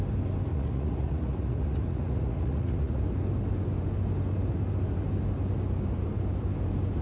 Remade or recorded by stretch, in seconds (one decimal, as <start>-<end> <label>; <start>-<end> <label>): 0.0-0.5 recorded; 0.5-3.0 remade; 3.0-7.0 recorded

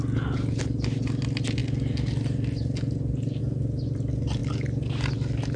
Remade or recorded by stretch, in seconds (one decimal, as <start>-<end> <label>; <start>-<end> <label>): 0.0-5.6 recorded

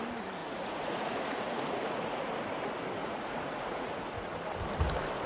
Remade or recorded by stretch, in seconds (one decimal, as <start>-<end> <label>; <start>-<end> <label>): 0.0-0.4 recorded; 0.4-2.3 remade; 2.3-3.0 recorded; 3.0-4.3 remade; 4.3-5.3 recorded

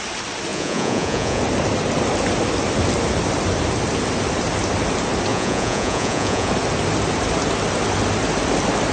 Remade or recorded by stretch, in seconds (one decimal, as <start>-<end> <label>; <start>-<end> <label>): 0.0-0.5 recorded; 0.5-1.4 remade; 1.4-5.3 recorded; 5.3-6.5 remade; 6.5-8.9 recorded

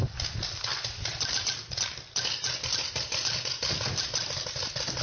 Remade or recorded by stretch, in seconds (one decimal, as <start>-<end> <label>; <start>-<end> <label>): 0.0-5.0 recorded

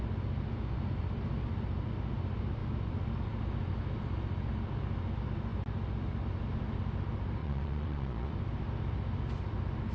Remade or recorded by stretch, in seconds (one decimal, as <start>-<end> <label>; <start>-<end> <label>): 0.0-7.4 recorded; 7.4-8.3 remade; 8.3-9.9 recorded